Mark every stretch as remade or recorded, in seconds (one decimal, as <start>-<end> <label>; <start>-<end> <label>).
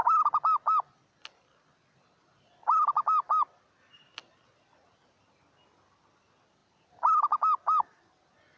0.0-8.6 recorded